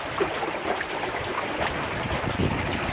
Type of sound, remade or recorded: recorded